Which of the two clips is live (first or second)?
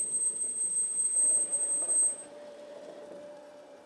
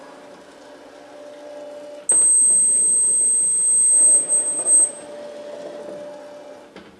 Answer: second